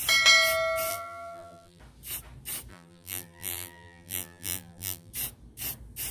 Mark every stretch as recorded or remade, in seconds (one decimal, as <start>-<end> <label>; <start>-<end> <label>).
0.0-0.9 recorded; 0.9-1.8 remade; 1.8-2.7 recorded; 2.7-5.1 remade; 5.1-6.1 recorded